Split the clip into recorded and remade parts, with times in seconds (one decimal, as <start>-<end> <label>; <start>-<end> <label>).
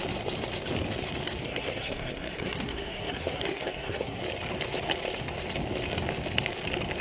0.0-1.4 recorded; 1.4-4.2 remade; 4.2-7.0 recorded